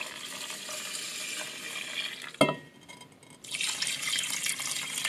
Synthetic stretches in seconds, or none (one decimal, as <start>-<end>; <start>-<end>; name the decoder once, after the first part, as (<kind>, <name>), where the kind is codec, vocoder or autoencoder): none